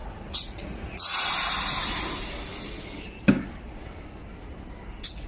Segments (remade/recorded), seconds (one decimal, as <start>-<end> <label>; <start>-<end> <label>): 0.0-1.3 remade; 1.3-5.3 recorded